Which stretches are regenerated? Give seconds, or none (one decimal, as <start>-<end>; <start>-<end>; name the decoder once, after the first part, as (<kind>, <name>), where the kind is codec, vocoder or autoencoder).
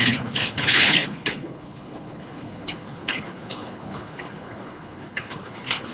0.0-5.9 (codec, HILCodec)